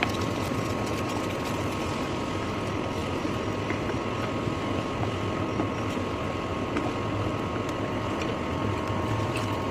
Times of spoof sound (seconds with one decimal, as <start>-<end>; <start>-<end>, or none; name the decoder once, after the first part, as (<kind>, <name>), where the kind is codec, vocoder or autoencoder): none